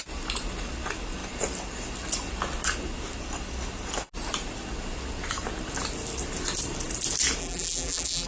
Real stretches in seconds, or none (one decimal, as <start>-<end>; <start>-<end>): 0.0-7.4